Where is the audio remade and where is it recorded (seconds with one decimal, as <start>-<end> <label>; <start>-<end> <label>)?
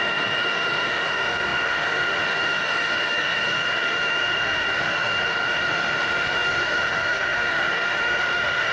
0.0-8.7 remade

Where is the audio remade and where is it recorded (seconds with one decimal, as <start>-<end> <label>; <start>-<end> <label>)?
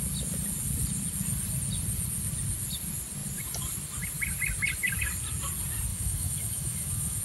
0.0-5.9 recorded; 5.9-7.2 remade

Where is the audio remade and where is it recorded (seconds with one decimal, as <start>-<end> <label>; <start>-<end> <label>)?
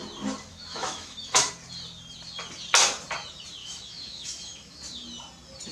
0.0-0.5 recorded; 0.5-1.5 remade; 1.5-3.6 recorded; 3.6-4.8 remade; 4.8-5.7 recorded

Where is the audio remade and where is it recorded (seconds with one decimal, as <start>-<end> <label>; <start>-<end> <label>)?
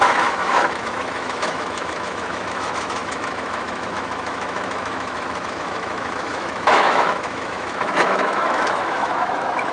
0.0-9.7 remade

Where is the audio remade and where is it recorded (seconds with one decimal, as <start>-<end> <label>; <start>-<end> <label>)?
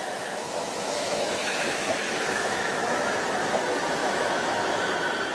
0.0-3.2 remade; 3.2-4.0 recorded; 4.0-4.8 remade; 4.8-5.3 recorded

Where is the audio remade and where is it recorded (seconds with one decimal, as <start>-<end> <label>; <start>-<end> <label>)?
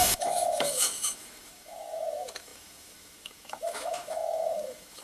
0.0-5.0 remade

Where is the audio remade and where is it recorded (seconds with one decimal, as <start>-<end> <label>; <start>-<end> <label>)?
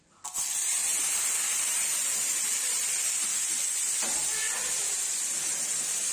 0.0-6.1 recorded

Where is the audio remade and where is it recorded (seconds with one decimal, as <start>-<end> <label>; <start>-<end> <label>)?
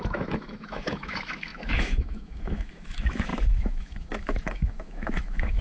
0.0-5.6 remade